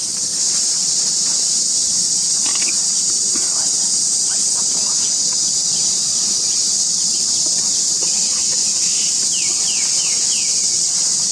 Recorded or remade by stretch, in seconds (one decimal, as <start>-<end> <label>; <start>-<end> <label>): 0.0-11.3 recorded